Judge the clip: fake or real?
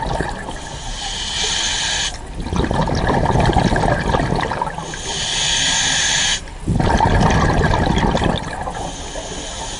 real